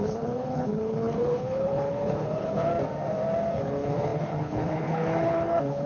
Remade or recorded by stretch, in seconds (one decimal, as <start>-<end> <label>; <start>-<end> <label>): 0.0-2.7 remade; 2.7-3.5 recorded; 3.5-5.9 remade